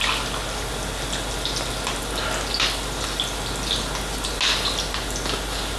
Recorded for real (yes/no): yes